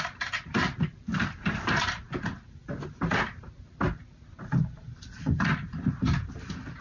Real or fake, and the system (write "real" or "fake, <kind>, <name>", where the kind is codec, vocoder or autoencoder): fake, vocoder, BigVGAN v2